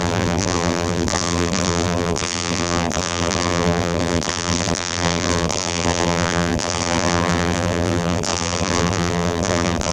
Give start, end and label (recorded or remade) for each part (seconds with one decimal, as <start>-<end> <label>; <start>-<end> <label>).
0.0-9.9 remade